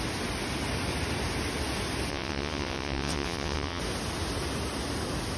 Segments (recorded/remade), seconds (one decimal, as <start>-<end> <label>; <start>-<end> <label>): 0.0-2.1 recorded; 2.1-3.8 remade; 3.8-5.4 recorded